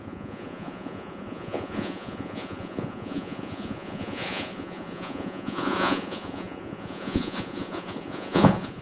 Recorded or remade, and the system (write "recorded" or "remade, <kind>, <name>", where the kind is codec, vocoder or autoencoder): remade, vocoder, Vocos